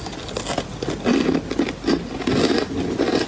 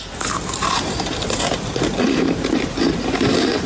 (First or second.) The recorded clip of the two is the first